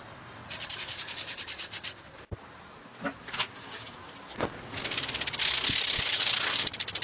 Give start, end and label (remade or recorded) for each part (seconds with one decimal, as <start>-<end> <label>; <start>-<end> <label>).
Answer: 0.0-0.4 recorded; 0.4-2.9 remade; 2.9-7.0 recorded